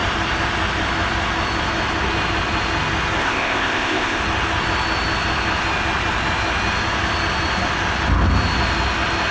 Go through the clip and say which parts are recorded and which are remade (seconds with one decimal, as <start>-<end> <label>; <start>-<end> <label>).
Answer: 0.0-3.2 recorded; 3.2-4.2 remade; 4.2-9.3 recorded